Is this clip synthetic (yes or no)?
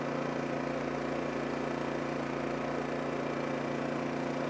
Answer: no